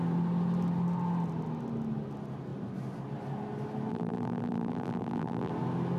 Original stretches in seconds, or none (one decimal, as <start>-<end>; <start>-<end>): 0.0-3.9; 5.5-6.0